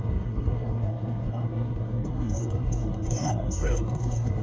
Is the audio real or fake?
fake